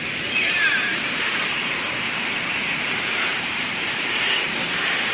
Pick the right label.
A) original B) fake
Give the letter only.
B